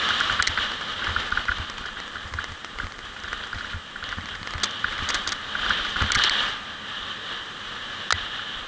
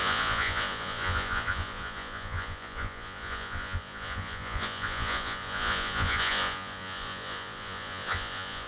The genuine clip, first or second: first